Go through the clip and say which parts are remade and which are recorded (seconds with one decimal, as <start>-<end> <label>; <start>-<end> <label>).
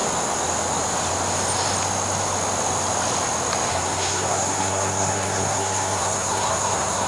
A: 0.0-3.7 recorded; 3.7-7.1 remade